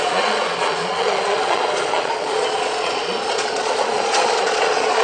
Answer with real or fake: fake